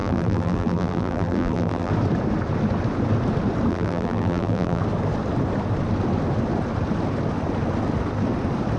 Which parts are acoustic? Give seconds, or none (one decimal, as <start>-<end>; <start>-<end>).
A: 1.9-3.7; 4.8-8.8